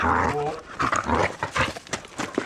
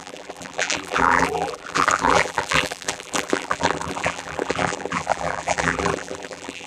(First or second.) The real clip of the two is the first